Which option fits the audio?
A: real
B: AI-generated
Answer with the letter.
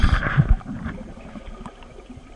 A